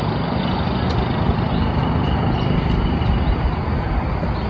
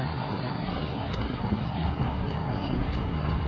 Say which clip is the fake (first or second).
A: second